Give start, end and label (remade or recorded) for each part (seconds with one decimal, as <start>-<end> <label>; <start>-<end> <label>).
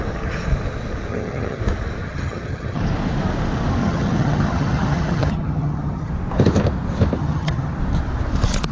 0.0-1.1 recorded; 1.1-1.6 remade; 1.6-2.0 recorded; 2.0-2.8 remade; 2.8-3.8 recorded; 3.8-6.1 remade; 6.1-7.2 recorded; 7.2-7.7 remade; 7.7-8.7 recorded